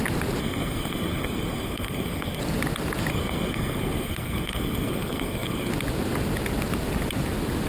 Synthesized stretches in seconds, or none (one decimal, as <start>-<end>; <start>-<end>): 0.4-2.4; 3.1-5.7